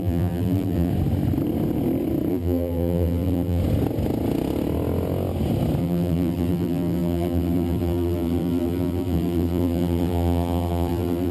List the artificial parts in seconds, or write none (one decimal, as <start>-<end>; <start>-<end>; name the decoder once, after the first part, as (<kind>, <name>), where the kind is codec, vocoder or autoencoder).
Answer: 0.0-0.9 (vocoder, BigVGAN v2); 2.3-3.6; 5.8-11.3